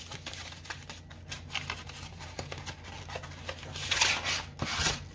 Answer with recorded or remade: recorded